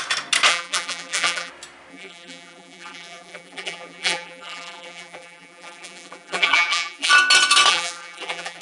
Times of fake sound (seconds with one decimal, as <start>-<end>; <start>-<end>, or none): 0.5-1.5; 1.9-7.1; 7.7-8.6